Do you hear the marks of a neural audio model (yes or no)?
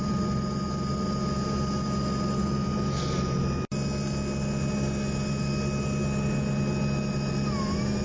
no